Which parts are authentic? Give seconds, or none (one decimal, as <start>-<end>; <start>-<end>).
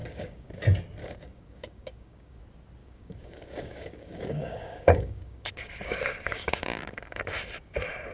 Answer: 0.5-1.0; 2.4-2.8; 7.2-8.1